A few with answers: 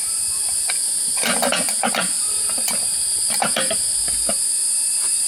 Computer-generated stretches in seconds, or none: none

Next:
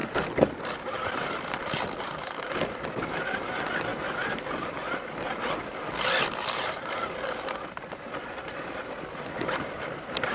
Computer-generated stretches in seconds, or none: 2.4-3.9 (vocoder, BigVGAN v2); 8.6-10.3